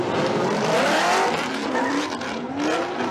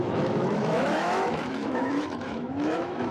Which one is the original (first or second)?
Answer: first